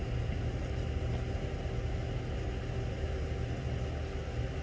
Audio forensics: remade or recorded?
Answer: recorded